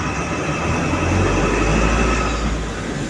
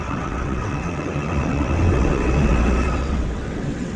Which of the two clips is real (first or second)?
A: first